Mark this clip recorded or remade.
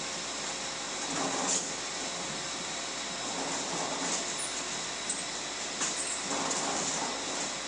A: recorded